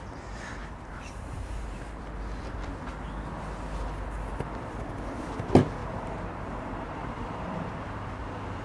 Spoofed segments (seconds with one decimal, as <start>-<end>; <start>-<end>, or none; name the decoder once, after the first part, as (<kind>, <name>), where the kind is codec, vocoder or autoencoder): 0.6-2.0 (vocoder, BigVGAN v2); 5.8-8.2